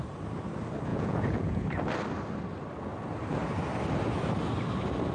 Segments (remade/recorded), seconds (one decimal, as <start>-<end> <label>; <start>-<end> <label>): 0.0-0.9 recorded; 0.9-1.6 remade; 1.6-5.1 recorded